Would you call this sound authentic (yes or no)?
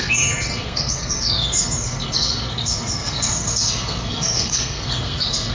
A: no